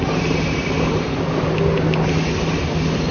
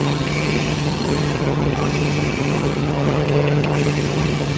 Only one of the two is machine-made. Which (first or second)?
second